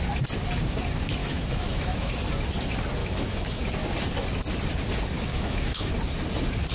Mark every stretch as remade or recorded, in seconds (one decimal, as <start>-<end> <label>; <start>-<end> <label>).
0.0-1.2 recorded; 1.2-2.1 remade; 2.1-3.0 recorded; 3.0-3.6 remade; 3.6-5.3 recorded; 5.3-5.9 remade; 5.9-6.7 recorded